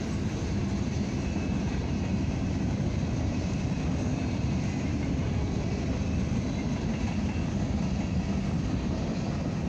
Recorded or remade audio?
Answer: recorded